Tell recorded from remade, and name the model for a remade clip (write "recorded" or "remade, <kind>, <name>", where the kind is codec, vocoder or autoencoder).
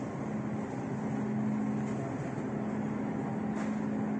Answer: recorded